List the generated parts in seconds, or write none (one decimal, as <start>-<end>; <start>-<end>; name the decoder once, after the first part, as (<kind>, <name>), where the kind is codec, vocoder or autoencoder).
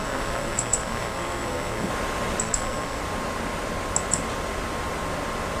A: 0.0-1.9 (codec, SNAC); 2.4-3.0